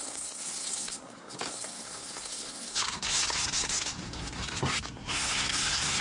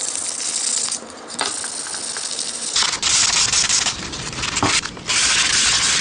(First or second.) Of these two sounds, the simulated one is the first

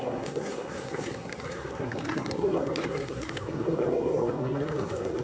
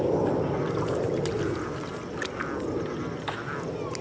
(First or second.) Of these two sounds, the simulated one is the first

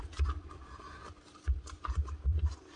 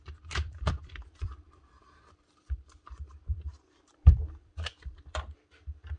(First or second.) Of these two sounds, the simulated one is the second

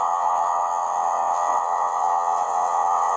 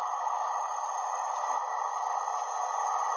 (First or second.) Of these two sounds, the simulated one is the first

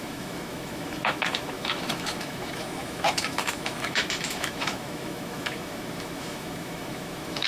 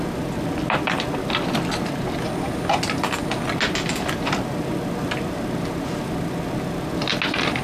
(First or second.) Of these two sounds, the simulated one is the first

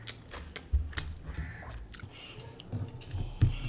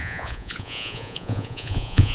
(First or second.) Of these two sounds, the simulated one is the second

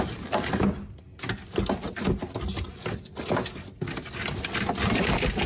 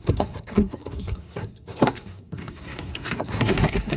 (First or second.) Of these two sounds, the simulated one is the second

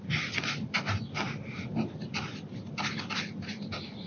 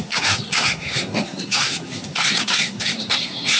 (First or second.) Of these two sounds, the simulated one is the second